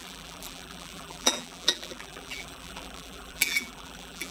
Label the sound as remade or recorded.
remade